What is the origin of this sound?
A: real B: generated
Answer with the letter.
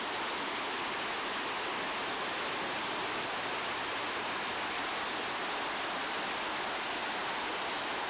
A